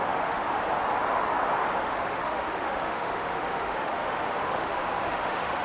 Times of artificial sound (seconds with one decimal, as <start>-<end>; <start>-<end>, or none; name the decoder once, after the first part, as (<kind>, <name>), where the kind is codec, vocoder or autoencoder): 0.0-0.6 (autoencoder, DAC-VAE); 1.7-5.6